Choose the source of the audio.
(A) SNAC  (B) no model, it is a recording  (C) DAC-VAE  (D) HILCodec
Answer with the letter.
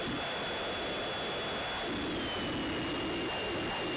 B